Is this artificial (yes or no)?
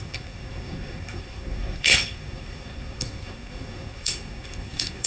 yes